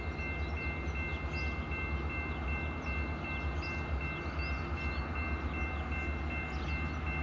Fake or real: real